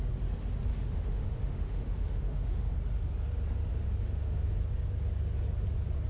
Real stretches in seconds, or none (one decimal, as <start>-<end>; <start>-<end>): 0.0-0.7; 2.7-3.7; 4.5-6.1